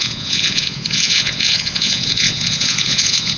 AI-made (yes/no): yes